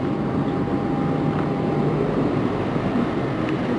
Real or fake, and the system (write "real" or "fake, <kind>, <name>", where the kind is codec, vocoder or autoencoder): real